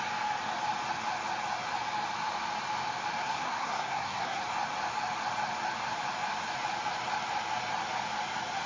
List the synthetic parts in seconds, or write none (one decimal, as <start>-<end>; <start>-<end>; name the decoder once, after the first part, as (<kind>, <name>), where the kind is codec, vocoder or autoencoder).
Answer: 3.2-4.4 (codec, SNAC)